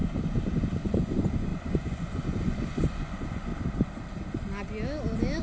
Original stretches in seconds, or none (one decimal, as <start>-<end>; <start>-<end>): 0.0-0.8; 3.5-5.4